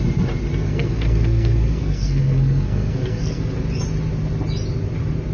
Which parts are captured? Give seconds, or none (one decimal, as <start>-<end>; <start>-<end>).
0.0-0.6; 3.4-5.3